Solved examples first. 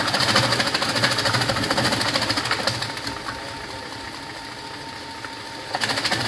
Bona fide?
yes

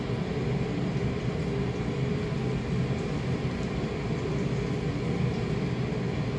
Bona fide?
yes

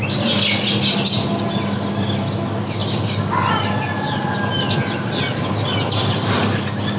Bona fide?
yes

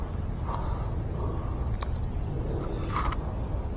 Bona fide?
yes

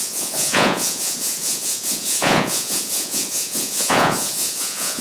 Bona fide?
no